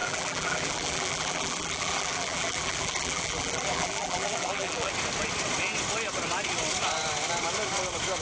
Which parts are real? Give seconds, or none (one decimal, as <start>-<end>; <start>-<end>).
4.9-8.2